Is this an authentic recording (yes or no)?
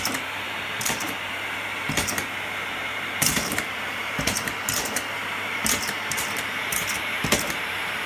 no